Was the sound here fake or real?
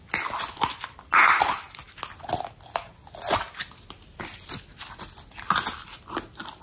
real